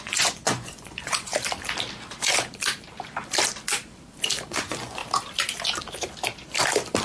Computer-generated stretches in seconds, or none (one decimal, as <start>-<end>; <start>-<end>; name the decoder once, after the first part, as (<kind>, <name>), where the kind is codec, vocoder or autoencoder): 0.0-1.3 (vocoder, Vocos); 4.5-5.0